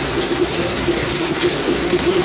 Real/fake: fake